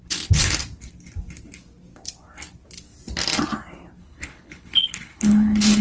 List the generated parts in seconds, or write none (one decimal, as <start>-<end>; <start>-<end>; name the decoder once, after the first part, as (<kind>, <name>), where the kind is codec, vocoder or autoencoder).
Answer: 4.0-5.8 (codec, HILCodec)